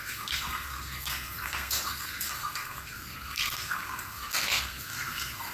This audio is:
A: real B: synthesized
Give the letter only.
B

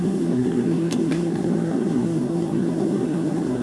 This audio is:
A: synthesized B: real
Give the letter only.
A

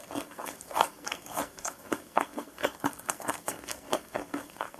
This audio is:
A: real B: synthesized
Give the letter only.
B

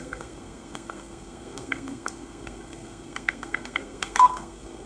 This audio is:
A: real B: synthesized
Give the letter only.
B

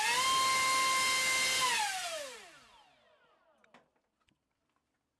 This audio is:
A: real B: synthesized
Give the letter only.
A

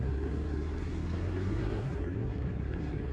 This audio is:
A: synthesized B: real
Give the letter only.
A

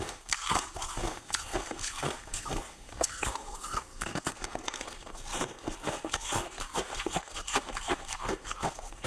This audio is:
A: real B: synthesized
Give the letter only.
B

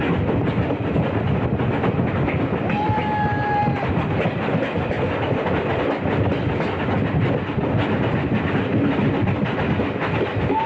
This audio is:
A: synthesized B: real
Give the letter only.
B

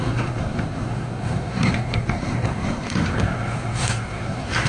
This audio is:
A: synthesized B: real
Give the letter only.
A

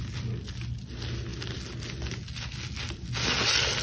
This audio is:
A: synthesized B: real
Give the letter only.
B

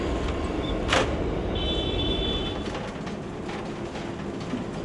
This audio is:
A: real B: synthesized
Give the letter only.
A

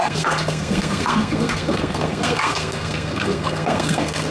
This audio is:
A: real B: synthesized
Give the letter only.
B